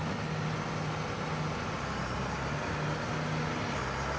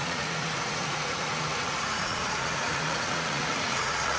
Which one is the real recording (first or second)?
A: first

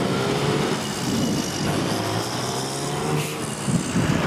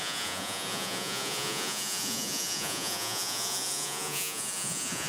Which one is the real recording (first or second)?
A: first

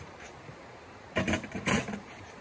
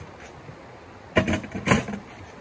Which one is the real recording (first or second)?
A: second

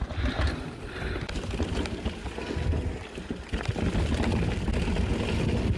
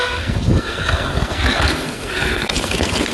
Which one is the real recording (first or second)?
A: first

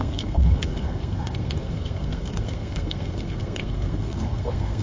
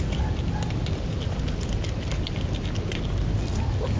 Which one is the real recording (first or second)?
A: second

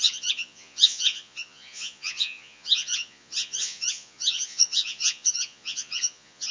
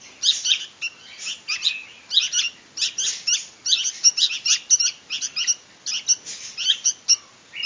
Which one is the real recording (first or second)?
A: second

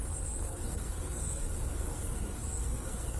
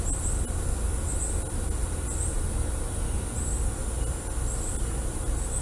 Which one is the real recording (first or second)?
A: second